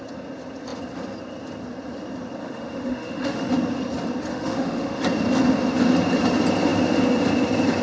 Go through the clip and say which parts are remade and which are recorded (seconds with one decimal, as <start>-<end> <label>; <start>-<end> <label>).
0.0-2.4 recorded; 2.4-3.5 remade; 3.5-4.3 recorded; 4.3-5.0 remade; 5.0-7.8 recorded

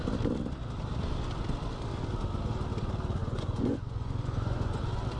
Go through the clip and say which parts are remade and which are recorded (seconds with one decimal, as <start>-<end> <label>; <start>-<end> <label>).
0.0-3.2 recorded; 3.2-4.8 remade; 4.8-5.2 recorded

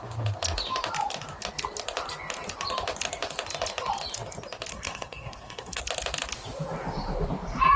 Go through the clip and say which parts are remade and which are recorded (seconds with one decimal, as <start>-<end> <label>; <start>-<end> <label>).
0.0-4.7 recorded; 4.7-5.8 remade; 5.8-7.8 recorded

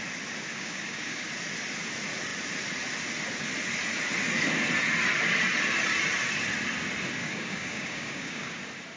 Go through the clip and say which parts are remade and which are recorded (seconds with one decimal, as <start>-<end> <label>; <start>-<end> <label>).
0.0-0.5 recorded; 0.5-1.3 remade; 1.3-7.2 recorded; 7.2-8.6 remade; 8.6-9.0 recorded

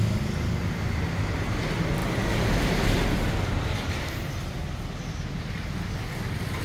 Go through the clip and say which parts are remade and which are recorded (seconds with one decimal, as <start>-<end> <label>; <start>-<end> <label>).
0.0-6.6 recorded

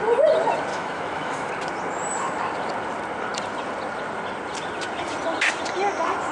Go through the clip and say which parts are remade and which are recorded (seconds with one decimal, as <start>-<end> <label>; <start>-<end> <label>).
0.0-0.7 recorded; 0.7-1.5 remade; 1.5-6.3 recorded

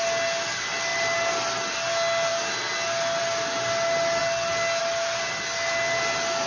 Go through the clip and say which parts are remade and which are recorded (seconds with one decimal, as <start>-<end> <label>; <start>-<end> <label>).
0.0-6.5 recorded